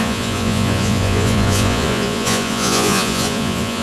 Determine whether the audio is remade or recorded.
remade